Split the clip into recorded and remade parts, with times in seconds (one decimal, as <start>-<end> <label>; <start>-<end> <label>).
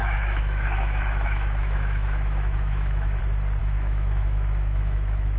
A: 0.0-3.2 remade; 3.2-3.6 recorded; 3.6-5.4 remade